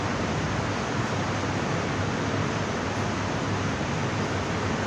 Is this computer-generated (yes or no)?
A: no